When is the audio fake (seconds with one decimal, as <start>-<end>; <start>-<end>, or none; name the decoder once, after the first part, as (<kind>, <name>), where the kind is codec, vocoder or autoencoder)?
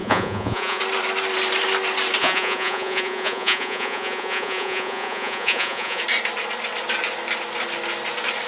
0.0-0.8 (vocoder, Vocos); 2.2-6.0